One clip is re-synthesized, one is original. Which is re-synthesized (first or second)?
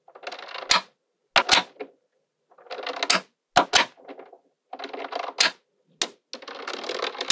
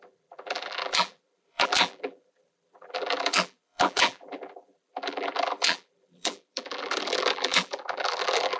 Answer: second